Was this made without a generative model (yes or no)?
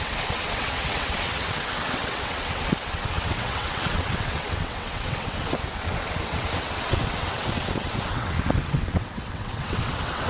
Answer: no